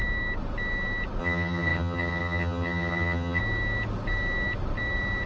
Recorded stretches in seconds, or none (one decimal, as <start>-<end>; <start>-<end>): 0.0-1.2; 3.4-5.3